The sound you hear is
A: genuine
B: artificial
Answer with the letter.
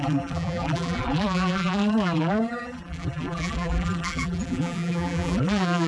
B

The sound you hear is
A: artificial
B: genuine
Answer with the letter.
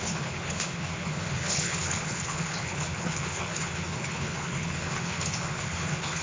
A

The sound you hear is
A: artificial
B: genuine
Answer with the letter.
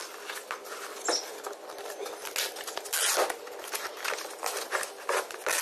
B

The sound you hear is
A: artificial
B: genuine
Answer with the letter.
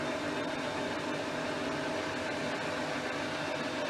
B